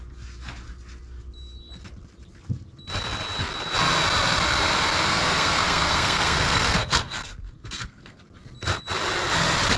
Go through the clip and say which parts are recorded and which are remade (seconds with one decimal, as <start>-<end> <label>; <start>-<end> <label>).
0.0-5.1 recorded; 5.1-8.2 remade; 8.2-9.8 recorded